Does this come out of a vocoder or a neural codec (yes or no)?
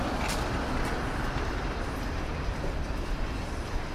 yes